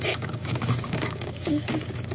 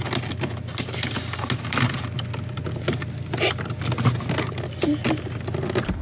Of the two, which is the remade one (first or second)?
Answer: first